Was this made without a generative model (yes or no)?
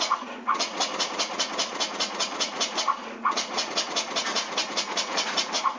no